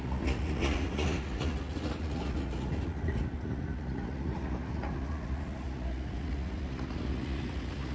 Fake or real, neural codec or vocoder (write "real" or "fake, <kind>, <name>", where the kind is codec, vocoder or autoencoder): fake, vocoder, Vocos